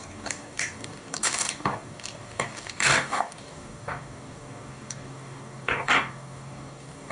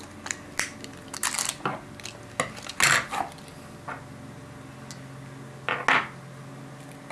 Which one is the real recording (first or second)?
second